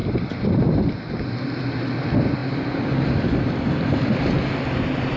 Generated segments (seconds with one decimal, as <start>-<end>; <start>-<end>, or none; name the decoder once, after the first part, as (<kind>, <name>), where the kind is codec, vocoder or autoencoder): none